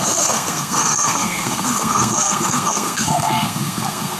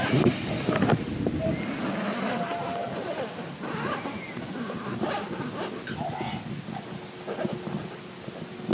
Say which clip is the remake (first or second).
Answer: first